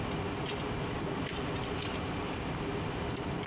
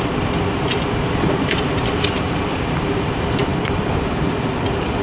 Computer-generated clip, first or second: second